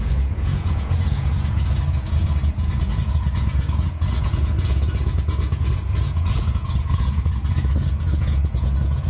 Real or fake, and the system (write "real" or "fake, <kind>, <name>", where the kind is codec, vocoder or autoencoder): fake, vocoder, Vocos